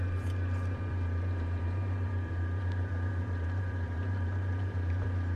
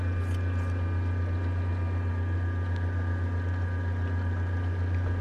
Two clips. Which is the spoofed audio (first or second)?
first